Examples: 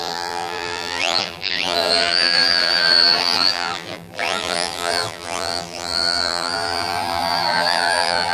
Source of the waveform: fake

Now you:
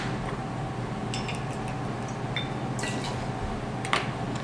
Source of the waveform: real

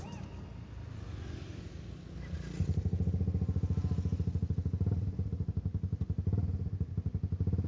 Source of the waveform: real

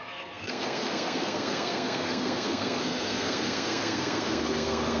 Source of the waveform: fake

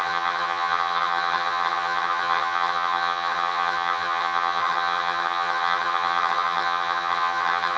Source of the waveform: fake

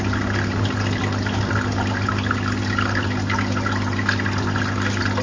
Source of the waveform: real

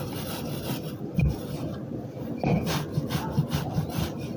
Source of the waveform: fake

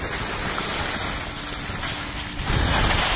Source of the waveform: real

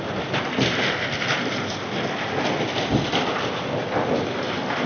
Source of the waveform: real